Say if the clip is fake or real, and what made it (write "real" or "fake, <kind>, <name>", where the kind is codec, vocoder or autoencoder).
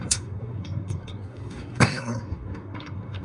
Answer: fake, codec, SNAC